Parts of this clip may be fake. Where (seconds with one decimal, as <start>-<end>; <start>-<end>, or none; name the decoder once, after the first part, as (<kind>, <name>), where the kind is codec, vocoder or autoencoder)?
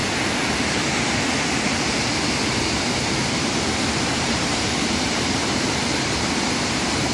4.2-7.1 (vocoder, BigVGAN v2)